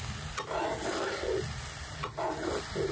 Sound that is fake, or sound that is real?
real